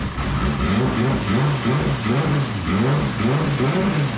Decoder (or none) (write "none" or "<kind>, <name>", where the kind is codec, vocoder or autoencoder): none